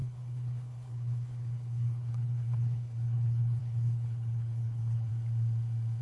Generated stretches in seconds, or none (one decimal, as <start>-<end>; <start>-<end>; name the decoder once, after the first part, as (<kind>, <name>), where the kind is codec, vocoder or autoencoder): 0.0-5.1 (codec, HILCodec)